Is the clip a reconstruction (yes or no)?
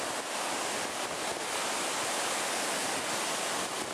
no